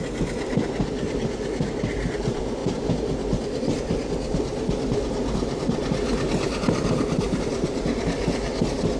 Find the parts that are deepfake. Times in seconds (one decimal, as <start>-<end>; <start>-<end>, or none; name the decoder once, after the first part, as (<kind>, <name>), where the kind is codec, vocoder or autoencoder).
none